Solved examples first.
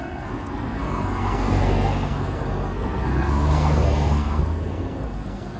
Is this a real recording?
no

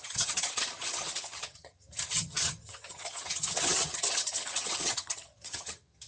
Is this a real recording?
no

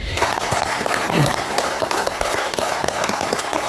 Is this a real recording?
no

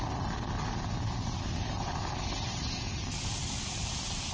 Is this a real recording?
yes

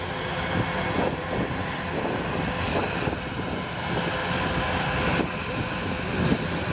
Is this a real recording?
yes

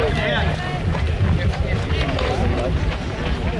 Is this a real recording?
yes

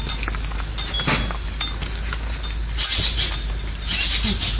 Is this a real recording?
yes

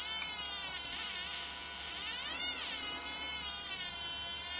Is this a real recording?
yes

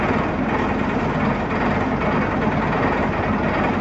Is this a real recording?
yes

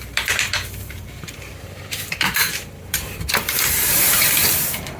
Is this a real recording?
no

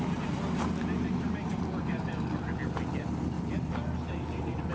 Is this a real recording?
yes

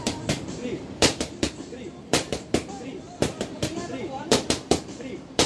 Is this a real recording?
no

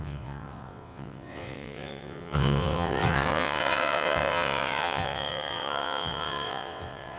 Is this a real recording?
no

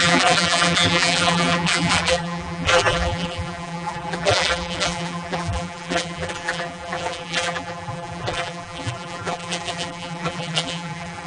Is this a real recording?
no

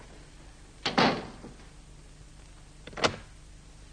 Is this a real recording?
yes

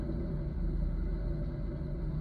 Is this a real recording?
yes